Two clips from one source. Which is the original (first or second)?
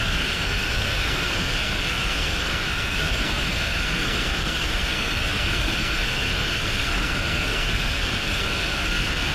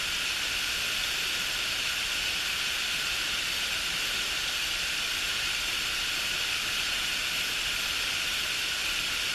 second